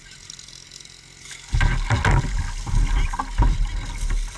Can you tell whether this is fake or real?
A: real